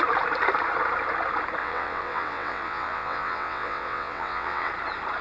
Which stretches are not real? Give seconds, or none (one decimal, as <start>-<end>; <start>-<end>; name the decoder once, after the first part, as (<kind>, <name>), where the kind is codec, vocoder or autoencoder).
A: 1.6-4.7 (vocoder, WaveNeXt)